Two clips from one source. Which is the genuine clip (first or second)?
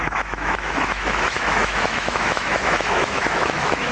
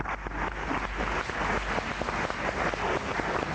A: second